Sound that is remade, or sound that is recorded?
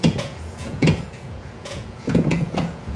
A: remade